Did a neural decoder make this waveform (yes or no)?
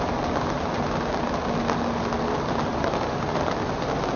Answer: no